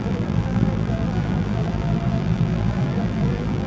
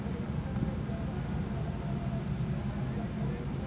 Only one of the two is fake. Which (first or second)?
first